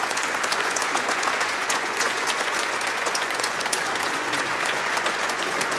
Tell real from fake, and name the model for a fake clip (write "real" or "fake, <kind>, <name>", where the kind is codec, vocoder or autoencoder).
fake, vocoder, Vocos